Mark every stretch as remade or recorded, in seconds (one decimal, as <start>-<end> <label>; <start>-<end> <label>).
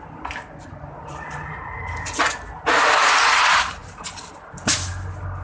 0.0-5.4 recorded